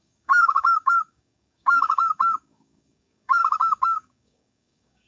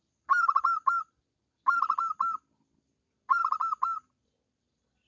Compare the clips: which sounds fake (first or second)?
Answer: first